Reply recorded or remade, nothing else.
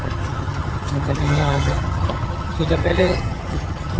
remade